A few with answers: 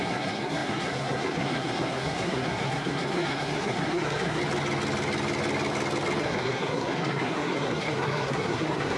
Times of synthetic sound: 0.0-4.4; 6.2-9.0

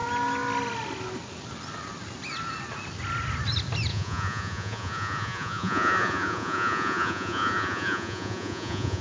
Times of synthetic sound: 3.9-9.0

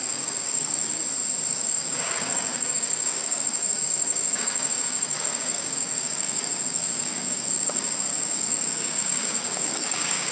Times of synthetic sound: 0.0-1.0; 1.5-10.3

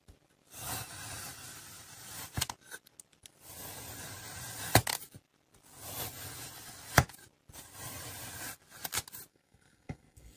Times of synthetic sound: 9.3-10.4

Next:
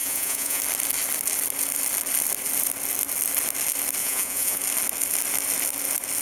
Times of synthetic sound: 0.0-0.6; 4.0-4.6